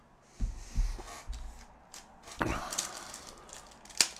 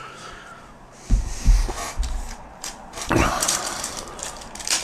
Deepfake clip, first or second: second